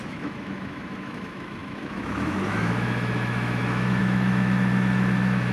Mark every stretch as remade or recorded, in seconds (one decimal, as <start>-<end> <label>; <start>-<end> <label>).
0.0-5.5 remade